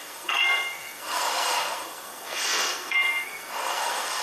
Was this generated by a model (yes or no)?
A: yes